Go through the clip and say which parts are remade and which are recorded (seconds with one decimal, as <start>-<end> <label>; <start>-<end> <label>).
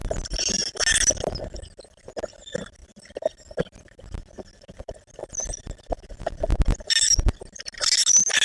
0.0-8.4 recorded